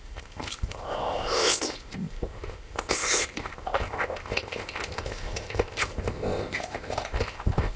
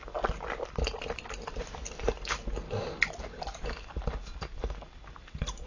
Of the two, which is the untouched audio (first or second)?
second